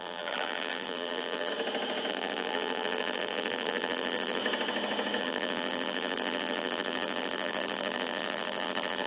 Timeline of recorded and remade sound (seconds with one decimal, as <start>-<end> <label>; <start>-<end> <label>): 0.0-1.5 remade; 1.5-2.1 recorded; 2.1-4.4 remade; 4.4-5.2 recorded; 5.2-9.1 remade